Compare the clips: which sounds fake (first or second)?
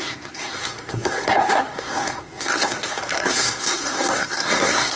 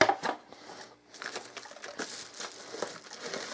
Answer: first